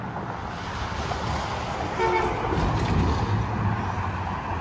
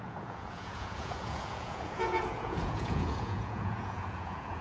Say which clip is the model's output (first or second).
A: second